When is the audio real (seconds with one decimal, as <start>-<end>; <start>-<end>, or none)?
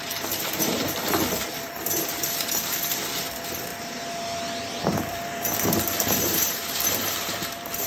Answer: 3.7-4.8